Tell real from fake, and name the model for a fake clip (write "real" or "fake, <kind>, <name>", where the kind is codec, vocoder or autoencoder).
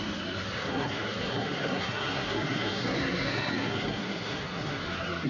fake, codec, SNAC